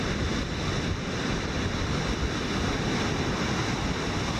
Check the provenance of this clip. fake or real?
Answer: real